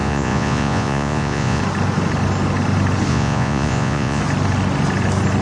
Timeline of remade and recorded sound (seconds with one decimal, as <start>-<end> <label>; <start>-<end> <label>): 0.0-1.6 remade; 1.6-3.1 recorded; 3.1-4.2 remade; 4.2-5.4 recorded